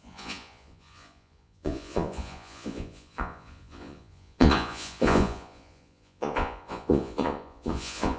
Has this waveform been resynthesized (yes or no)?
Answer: yes